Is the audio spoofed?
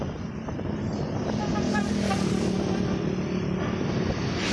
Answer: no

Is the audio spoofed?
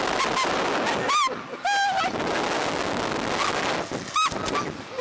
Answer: no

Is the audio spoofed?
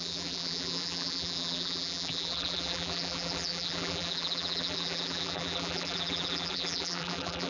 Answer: yes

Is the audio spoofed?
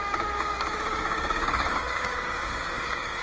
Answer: yes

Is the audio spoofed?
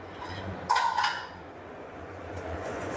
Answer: yes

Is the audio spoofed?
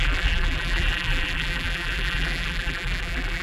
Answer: yes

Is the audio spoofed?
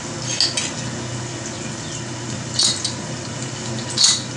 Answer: no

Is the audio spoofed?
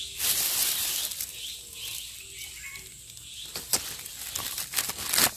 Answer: no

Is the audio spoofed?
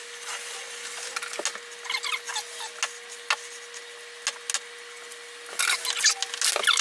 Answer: no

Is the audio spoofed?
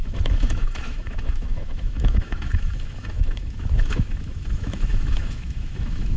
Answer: yes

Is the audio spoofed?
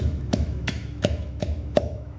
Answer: yes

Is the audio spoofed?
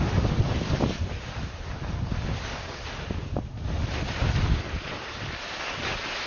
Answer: no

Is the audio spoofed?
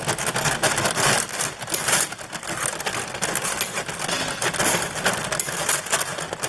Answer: no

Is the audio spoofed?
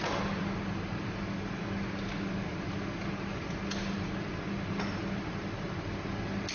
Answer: no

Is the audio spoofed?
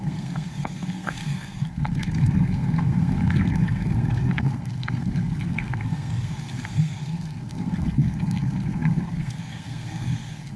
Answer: yes